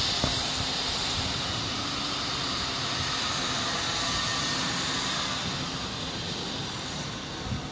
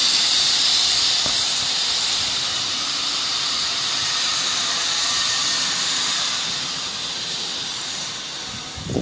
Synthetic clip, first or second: second